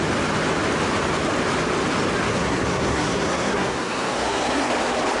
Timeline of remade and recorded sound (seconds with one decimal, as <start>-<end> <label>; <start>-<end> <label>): 0.0-2.3 recorded; 2.3-4.7 remade; 4.7-5.2 recorded